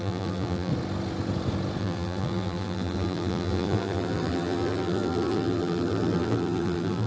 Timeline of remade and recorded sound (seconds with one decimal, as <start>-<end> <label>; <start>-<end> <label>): 0.0-0.7 remade; 0.7-1.8 recorded; 1.8-7.1 remade